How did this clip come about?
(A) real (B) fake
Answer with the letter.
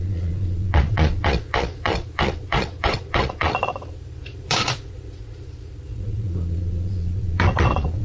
B